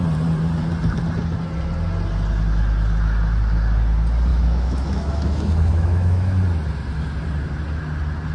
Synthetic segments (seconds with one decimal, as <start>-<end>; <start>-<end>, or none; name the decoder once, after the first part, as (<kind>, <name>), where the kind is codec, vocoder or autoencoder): 4.3-6.4 (autoencoder, DAC-VAE)